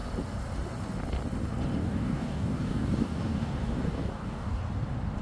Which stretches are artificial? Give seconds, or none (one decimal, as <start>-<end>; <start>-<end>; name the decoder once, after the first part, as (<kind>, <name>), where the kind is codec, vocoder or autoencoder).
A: 1.8-4.6 (codec, DAC)